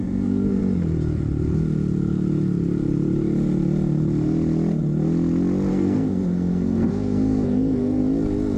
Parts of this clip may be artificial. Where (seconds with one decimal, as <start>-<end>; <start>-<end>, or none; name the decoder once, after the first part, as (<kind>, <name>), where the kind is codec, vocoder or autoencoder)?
0.0-0.6 (codec, SNAC); 5.7-8.0